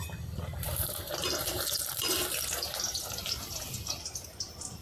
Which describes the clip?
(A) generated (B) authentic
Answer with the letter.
A